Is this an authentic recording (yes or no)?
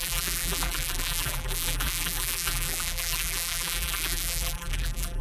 no